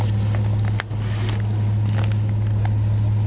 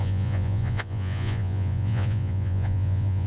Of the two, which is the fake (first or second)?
second